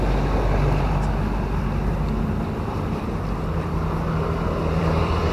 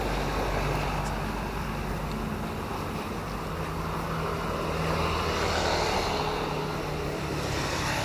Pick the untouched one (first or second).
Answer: second